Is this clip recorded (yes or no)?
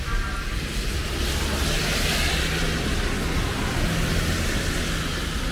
yes